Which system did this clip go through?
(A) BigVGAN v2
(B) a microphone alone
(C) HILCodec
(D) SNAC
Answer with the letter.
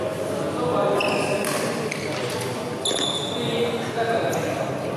B